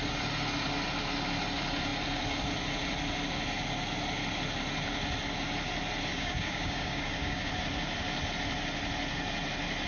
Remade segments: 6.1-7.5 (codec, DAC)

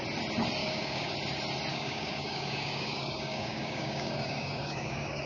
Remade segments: 0.6-1.1 (codec, DAC); 1.7-5.3

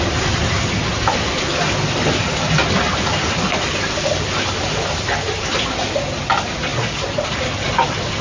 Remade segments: none